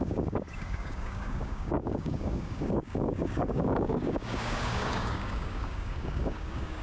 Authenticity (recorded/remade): remade